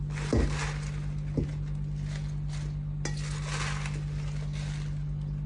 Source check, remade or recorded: recorded